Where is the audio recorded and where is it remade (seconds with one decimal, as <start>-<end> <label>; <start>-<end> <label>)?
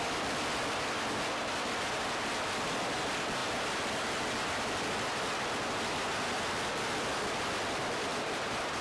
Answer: 0.0-8.8 recorded